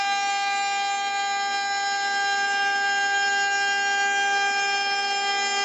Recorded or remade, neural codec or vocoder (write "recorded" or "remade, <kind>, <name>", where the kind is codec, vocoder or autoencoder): recorded